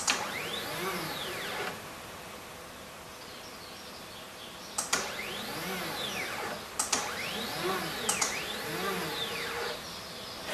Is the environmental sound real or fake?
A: real